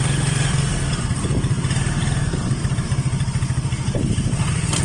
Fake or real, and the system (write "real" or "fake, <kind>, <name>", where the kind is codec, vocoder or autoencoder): real